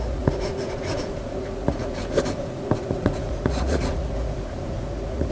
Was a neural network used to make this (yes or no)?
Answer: yes